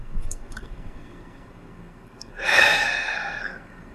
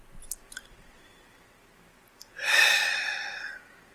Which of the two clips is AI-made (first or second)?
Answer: first